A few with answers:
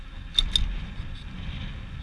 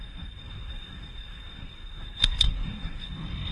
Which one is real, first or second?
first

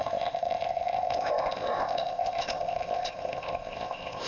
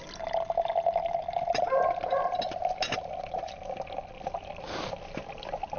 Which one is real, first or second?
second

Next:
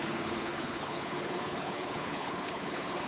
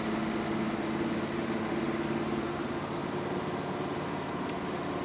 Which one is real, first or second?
second